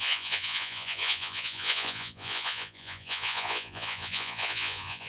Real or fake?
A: fake